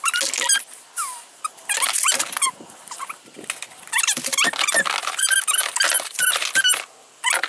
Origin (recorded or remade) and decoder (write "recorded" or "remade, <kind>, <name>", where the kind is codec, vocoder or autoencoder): recorded